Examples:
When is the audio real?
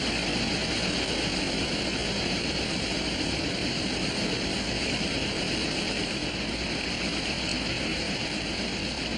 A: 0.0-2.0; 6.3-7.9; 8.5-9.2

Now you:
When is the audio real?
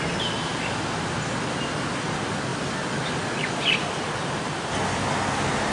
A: 0.0-5.7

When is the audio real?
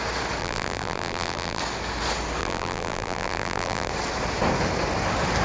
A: 0.0-0.4; 1.6-2.4; 3.9-5.4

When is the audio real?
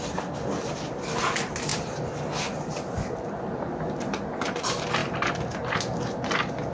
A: 0.0-5.0; 5.8-6.7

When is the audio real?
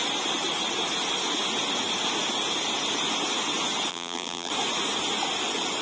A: 0.0-3.9; 4.5-5.8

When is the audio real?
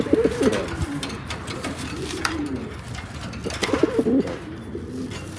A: 0.0-0.8; 2.5-3.6; 4.7-5.4